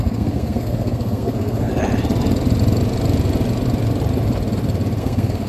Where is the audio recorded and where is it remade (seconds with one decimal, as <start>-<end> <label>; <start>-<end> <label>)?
0.0-1.7 remade; 1.7-5.0 recorded; 5.0-5.5 remade